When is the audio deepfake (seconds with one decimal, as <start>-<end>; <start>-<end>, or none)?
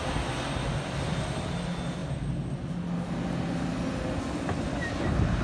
none